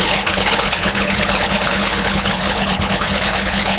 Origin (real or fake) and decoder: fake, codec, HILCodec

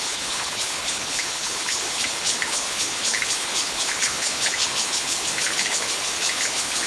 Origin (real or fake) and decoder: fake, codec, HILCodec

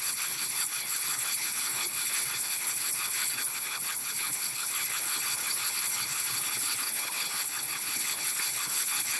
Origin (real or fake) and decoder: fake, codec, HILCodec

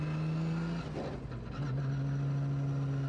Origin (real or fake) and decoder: real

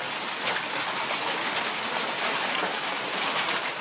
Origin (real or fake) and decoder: real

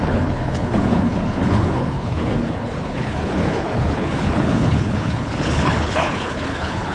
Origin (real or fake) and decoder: fake, codec, HILCodec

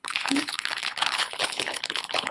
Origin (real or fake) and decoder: fake, codec, HILCodec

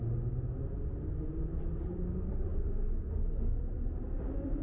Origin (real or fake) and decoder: real